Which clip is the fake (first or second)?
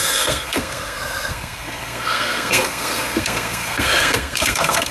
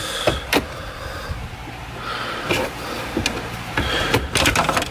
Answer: first